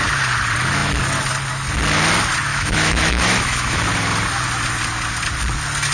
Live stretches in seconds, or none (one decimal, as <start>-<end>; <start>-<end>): 0.0-2.5; 3.8-5.9